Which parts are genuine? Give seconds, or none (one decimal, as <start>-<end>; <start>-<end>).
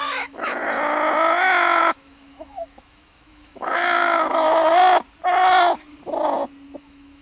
0.6-1.8; 4.8-6.8